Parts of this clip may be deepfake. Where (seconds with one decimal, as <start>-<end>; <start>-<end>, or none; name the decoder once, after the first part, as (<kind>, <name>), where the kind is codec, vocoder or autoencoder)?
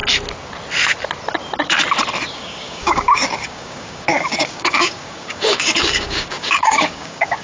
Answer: 2.3-7.4 (codec, DAC)